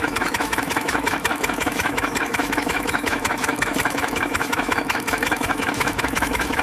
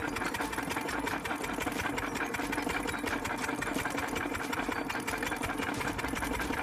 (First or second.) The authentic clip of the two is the second